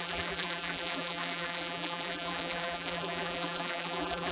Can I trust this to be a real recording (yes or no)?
no